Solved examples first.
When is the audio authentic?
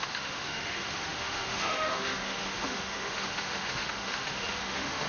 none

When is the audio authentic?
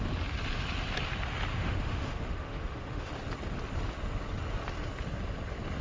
0.0-1.5; 3.1-5.8